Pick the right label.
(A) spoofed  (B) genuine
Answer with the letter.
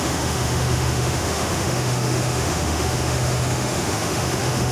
A